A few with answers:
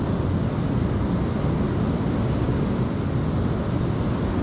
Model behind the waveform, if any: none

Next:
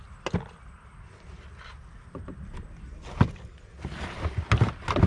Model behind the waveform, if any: none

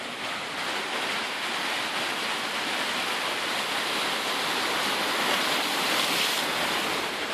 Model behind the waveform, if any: none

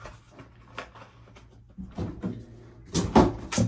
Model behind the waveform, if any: none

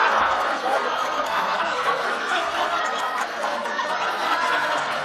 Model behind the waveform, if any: codec, SNAC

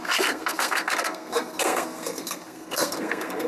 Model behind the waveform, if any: codec, SNAC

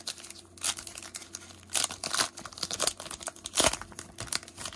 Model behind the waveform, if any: none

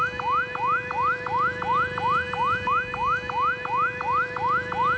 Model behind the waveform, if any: none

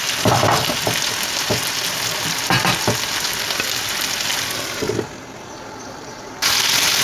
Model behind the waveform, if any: none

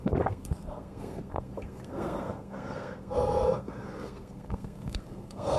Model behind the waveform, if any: codec, SNAC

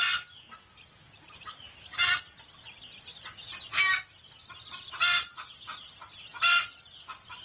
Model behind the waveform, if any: none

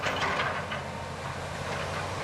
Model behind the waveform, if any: none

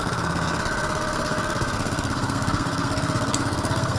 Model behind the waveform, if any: codec, SNAC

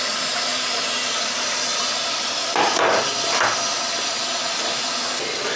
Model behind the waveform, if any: none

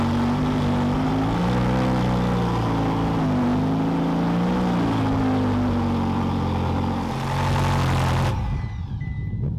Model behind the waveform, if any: none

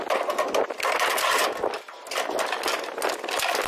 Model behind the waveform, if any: none